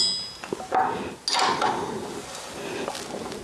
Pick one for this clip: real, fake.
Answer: real